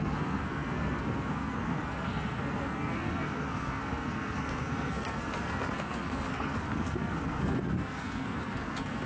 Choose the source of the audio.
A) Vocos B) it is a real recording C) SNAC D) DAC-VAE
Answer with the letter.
C